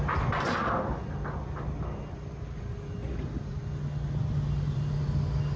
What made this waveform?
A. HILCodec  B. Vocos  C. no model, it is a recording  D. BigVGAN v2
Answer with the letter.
C